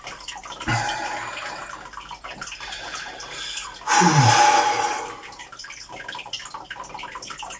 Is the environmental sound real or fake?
real